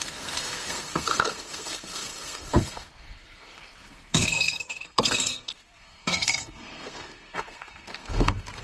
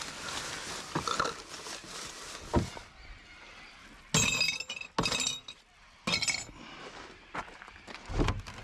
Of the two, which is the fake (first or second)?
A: first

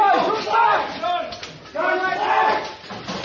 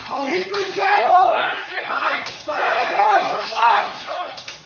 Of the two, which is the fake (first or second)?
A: second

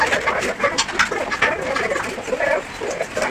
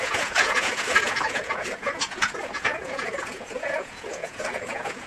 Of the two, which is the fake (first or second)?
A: second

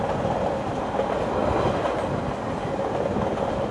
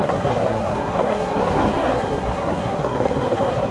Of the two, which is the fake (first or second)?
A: second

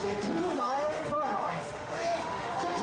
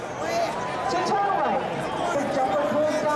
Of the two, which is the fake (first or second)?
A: first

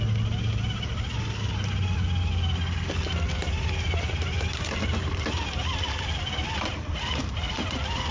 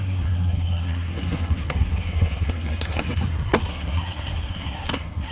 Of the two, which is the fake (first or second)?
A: second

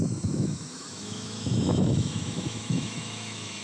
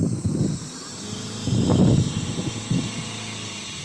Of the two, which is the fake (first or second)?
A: first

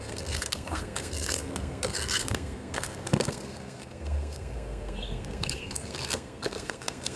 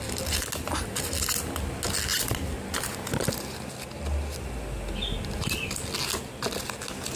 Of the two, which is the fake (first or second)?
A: first